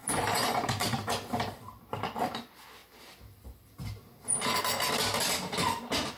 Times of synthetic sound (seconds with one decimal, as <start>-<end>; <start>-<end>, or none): 0.0-1.6